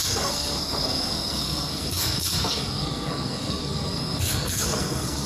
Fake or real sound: fake